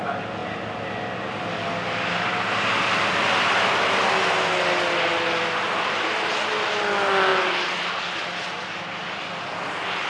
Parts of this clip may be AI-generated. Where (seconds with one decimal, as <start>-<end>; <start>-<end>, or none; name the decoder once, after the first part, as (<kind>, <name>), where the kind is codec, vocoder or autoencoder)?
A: none